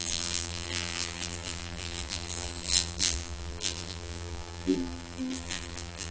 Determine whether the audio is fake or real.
fake